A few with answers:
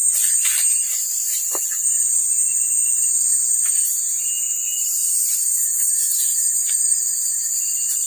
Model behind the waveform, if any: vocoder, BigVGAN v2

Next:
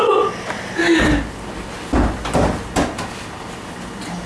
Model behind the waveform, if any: none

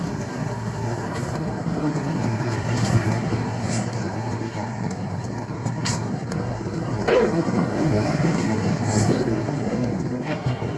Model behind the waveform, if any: codec, SNAC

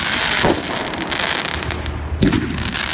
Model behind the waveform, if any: none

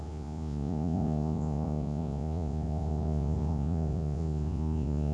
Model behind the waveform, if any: vocoder, Vocos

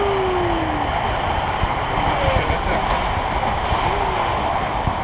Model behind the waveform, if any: none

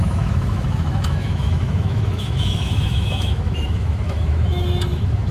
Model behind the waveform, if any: autoencoder, DAC-VAE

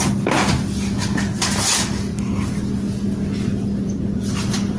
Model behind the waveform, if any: none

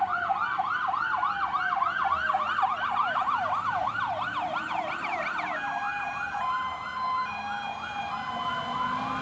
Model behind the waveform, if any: none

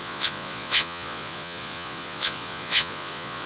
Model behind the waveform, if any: vocoder, Vocos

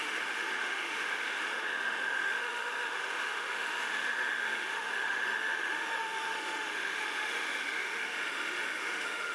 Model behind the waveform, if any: autoencoder, DAC-VAE